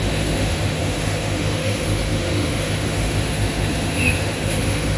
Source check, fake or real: fake